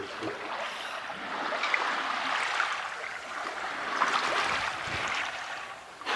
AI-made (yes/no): no